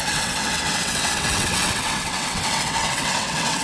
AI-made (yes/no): yes